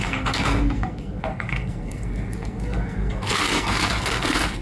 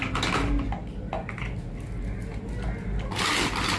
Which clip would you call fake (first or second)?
first